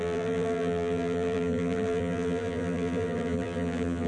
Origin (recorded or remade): remade